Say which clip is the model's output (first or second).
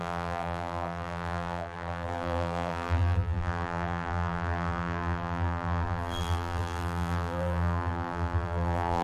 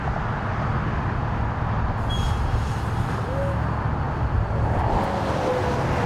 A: first